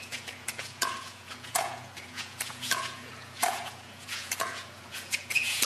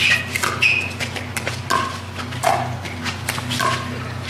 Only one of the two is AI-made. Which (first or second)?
first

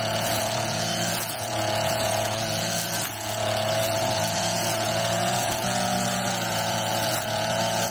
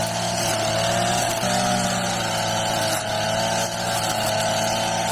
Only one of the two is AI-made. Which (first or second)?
first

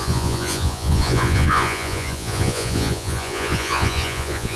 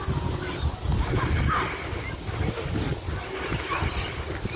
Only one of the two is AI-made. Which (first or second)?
first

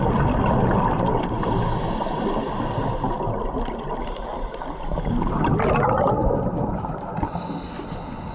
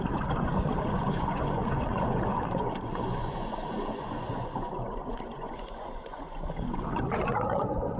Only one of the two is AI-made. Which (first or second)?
second